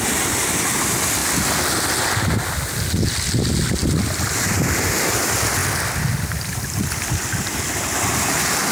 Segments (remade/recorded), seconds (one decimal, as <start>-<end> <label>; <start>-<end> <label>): 0.0-8.7 recorded